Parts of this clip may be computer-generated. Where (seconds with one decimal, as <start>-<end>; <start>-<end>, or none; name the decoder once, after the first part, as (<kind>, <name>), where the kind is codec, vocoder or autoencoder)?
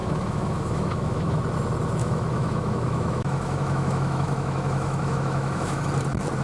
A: 0.0-1.4 (autoencoder, DAC-VAE); 2.0-5.8